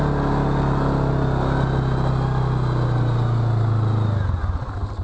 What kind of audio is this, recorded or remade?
recorded